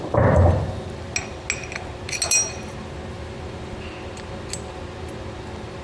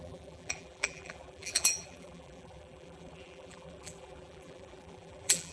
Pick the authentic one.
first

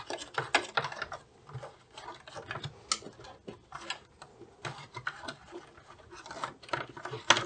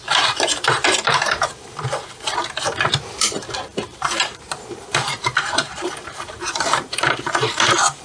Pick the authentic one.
first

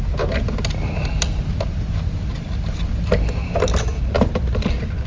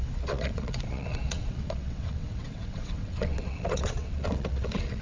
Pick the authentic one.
first